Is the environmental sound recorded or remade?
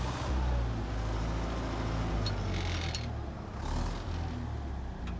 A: recorded